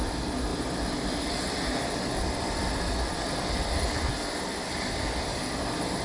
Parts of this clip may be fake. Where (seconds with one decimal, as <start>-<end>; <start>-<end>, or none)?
0.5-4.1